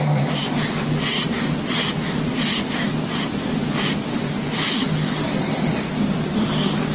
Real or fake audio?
real